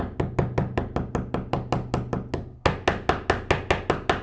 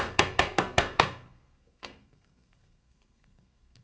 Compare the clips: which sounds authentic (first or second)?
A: first